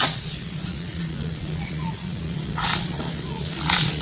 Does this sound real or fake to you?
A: fake